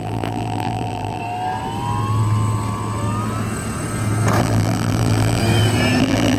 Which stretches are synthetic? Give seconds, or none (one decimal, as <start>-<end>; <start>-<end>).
0.0-1.2; 4.4-5.4; 6.0-6.4